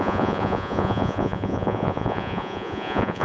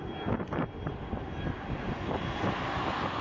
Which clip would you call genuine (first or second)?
second